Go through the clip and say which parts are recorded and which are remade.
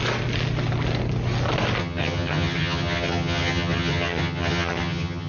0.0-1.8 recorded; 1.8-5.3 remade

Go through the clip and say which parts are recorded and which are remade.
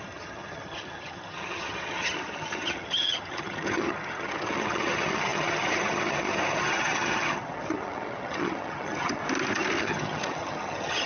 0.0-9.2 remade; 9.2-9.8 recorded; 9.8-11.1 remade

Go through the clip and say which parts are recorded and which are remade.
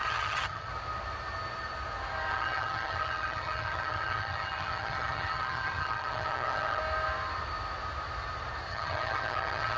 0.0-0.7 remade; 0.7-2.3 recorded; 2.3-6.8 remade; 6.8-8.7 recorded; 8.7-9.8 remade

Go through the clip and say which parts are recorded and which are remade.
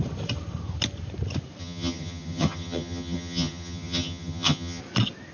0.0-1.6 recorded; 1.6-4.8 remade; 4.8-5.3 recorded